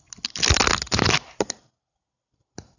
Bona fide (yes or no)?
yes